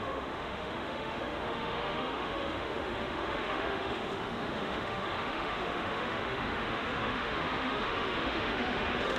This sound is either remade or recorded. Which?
remade